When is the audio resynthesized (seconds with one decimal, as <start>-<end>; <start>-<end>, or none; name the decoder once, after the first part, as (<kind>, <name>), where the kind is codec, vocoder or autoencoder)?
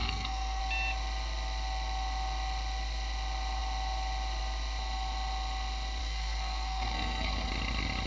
0.0-0.6 (codec, SNAC); 6.0-7.5